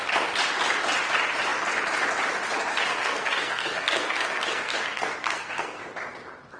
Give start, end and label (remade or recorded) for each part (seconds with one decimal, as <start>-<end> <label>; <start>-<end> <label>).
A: 0.0-2.7 recorded; 2.7-5.8 remade; 5.8-6.6 recorded